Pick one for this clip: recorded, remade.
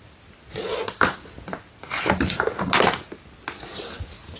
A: recorded